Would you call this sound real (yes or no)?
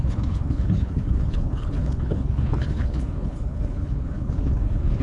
no